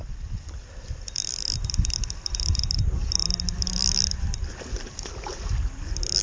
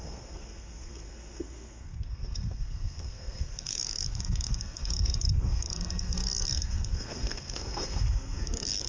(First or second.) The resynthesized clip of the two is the second